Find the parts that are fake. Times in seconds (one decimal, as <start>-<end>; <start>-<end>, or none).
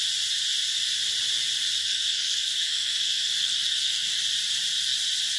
1.8-4.2